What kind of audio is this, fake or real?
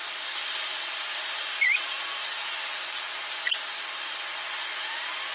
real